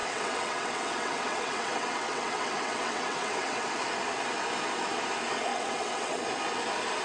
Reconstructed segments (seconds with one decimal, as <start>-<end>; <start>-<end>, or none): 0.0-3.7; 5.5-6.2